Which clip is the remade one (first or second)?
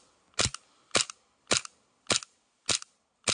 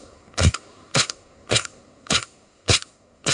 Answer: second